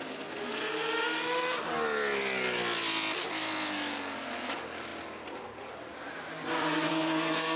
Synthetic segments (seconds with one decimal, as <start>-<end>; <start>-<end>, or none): 6.9-7.6